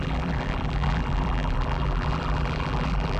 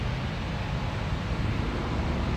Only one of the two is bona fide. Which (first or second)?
second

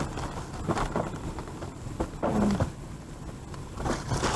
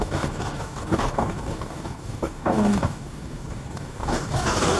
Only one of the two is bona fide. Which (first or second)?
first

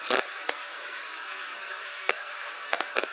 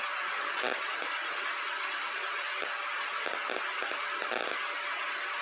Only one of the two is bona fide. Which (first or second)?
second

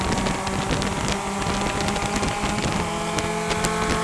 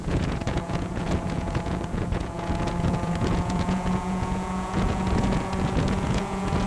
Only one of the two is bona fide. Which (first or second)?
first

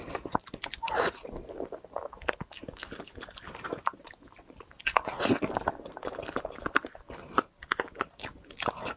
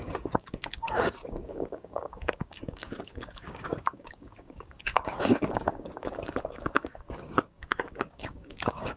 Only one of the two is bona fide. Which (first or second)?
first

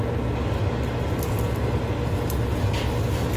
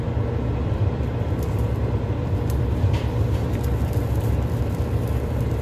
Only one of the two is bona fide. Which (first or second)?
first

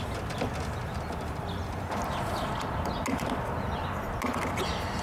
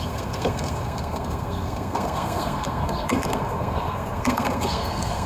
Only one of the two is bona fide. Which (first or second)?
first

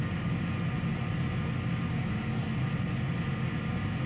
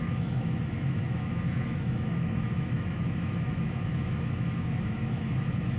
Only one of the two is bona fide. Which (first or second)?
first